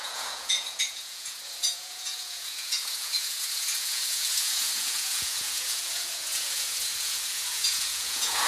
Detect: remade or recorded remade